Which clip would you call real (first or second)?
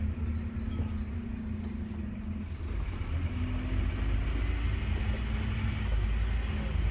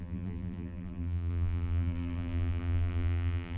first